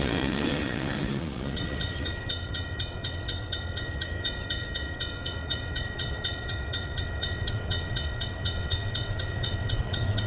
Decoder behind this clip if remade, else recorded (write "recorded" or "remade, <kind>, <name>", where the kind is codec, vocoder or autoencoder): remade, vocoder, WaveNeXt